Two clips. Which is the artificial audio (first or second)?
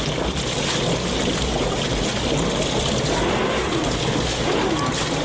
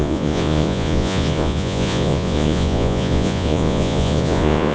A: second